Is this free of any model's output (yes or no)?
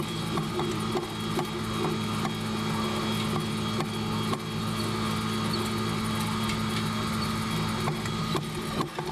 yes